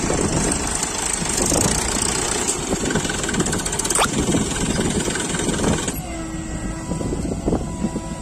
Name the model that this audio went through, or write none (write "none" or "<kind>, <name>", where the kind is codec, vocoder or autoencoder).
none